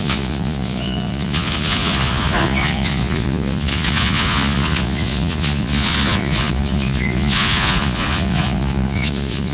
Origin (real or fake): fake